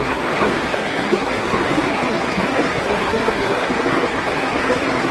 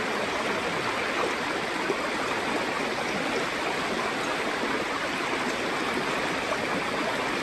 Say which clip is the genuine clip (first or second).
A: second